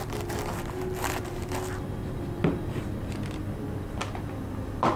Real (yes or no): yes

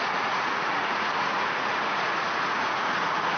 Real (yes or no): no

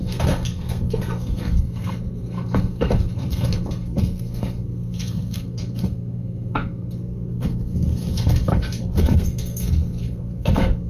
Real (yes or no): no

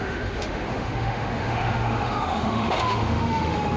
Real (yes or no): no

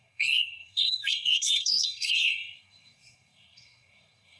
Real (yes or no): no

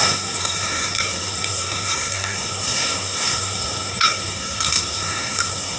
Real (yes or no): no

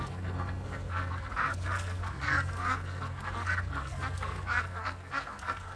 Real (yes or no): no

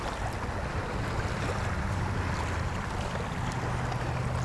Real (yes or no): yes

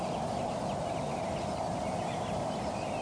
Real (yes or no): yes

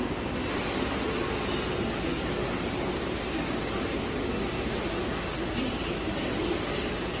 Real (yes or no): yes